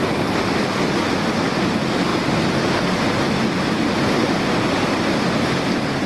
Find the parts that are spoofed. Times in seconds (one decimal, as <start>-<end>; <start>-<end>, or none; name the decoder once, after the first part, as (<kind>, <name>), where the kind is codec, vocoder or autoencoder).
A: 2.1-2.8 (vocoder, BigVGAN v2)